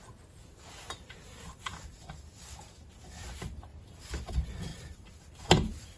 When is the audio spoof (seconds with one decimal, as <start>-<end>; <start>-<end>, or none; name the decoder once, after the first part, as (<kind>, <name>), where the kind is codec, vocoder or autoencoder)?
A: none